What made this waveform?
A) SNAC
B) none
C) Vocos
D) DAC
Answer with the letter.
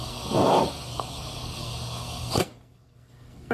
A